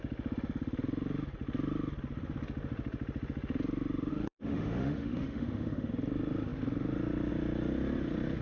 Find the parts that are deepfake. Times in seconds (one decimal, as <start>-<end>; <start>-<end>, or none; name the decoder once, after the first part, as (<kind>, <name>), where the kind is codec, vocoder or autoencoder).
4.1-5.9 (autoencoder, DAC-VAE)